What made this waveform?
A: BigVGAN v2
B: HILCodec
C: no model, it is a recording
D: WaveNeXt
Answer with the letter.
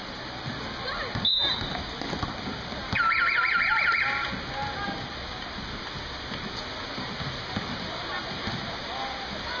C